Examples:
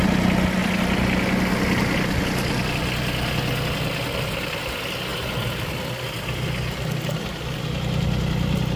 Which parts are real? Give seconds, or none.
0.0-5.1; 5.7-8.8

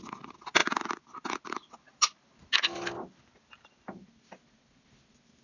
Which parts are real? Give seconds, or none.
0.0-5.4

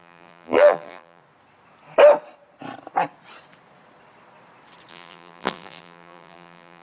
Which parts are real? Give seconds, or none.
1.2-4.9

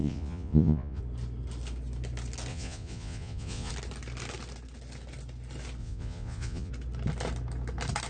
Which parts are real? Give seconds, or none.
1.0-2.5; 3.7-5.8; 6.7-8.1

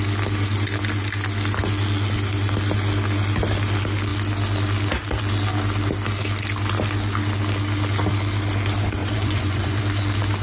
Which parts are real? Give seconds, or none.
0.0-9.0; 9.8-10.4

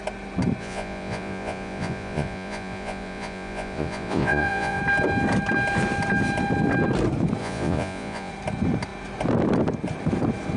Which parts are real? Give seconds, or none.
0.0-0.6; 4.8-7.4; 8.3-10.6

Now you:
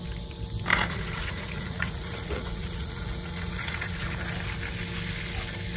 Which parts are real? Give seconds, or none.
0.0-0.7; 4.2-5.8

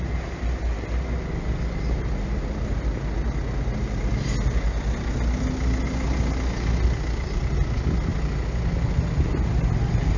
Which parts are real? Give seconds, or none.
0.0-10.2